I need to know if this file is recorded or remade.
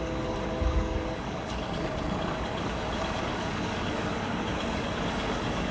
remade